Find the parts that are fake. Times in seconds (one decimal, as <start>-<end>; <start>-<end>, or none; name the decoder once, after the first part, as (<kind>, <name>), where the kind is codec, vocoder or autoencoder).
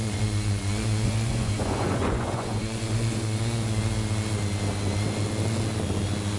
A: 0.0-3.8 (vocoder, Vocos)